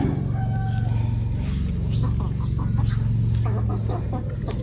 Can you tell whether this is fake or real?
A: real